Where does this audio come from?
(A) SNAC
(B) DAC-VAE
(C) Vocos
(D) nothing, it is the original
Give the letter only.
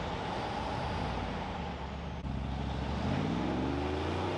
D